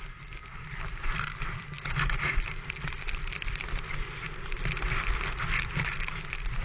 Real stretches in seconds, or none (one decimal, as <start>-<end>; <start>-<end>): 0.0-0.4; 3.9-6.6